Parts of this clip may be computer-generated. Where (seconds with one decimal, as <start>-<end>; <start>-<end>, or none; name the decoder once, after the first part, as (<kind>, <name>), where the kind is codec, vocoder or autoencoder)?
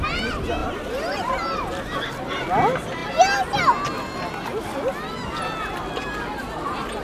0.6-1.3 (vocoder, BigVGAN v2)